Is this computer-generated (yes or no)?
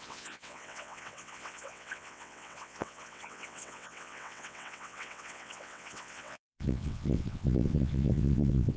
yes